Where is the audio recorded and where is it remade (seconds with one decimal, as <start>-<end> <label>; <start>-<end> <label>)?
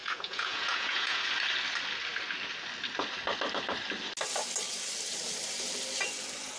0.0-1.2 remade; 1.2-6.6 recorded